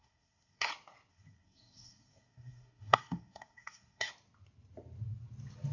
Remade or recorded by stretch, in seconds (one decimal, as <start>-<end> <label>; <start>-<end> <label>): 0.0-0.7 remade; 0.7-1.1 recorded; 1.1-4.1 remade; 4.1-5.7 recorded